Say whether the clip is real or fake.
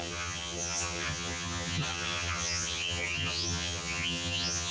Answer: fake